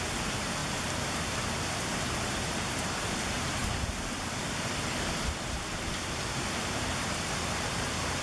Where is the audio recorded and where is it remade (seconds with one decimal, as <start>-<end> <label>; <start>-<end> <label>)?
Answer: 0.0-3.6 remade; 3.6-5.8 recorded; 5.8-8.2 remade